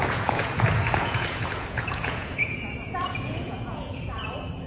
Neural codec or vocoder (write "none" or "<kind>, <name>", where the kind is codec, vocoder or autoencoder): vocoder, Vocos